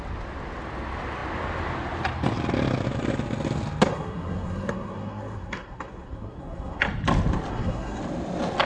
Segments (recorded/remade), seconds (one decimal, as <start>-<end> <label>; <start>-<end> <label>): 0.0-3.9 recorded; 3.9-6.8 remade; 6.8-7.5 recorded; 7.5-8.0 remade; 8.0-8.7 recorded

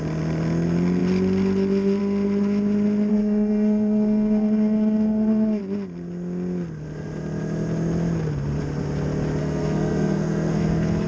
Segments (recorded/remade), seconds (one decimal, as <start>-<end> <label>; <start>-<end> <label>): 0.0-3.1 recorded; 3.1-5.6 remade; 5.6-9.4 recorded; 9.4-11.1 remade

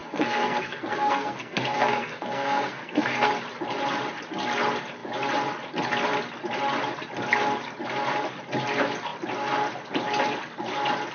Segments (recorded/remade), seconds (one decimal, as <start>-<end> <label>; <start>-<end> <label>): 0.0-3.3 remade; 3.3-11.1 recorded

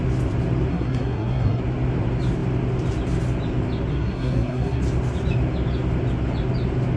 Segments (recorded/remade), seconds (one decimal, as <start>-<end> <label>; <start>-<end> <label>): 0.0-0.7 recorded; 0.7-1.6 remade; 1.6-3.9 recorded; 3.9-4.8 remade; 4.8-7.0 recorded

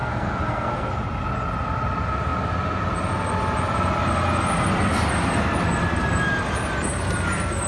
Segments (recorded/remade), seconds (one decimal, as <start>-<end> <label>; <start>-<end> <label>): 0.0-0.9 remade; 0.9-7.7 recorded